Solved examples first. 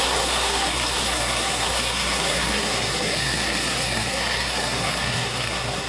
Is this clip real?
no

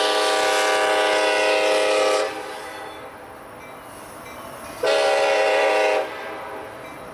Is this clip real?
yes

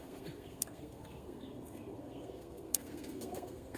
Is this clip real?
no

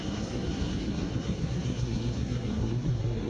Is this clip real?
no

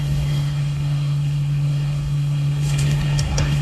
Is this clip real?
no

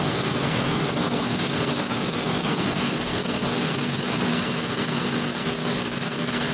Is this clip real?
no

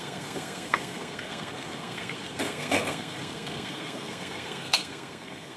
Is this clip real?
no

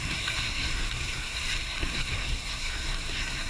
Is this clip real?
no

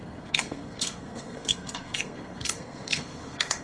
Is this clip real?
no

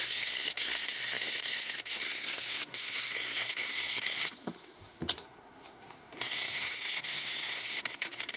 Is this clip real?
no